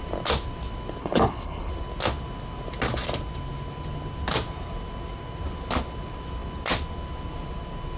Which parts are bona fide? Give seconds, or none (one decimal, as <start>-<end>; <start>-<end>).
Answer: 0.0-1.0; 1.7-8.0